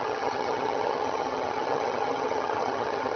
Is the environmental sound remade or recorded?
remade